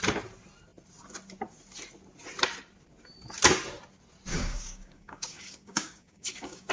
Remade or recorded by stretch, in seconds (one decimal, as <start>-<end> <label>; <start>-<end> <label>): 0.0-4.3 recorded; 4.3-6.7 remade